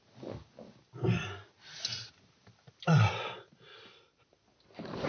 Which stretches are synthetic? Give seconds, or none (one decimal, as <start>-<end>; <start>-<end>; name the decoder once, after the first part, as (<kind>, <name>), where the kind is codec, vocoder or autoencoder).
none

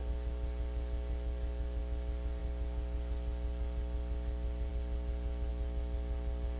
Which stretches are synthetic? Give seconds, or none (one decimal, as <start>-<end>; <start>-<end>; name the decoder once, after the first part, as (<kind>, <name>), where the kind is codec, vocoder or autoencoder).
none